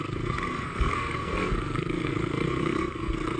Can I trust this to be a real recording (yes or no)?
no